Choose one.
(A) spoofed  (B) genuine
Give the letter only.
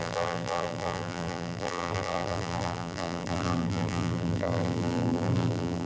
A